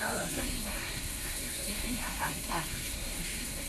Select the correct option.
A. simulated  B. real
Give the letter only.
A